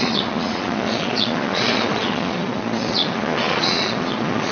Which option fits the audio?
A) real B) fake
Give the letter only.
B